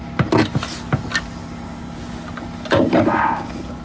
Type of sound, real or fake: real